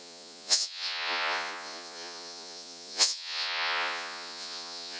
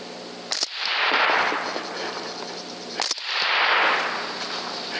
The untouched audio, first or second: second